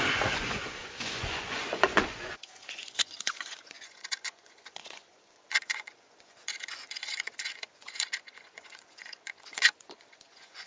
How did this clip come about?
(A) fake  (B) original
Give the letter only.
A